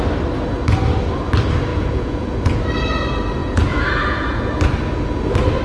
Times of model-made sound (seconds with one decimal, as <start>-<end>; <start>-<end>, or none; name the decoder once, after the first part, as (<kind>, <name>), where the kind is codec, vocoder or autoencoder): 1.7-2.6 (vocoder, Vocos); 3.4-4.5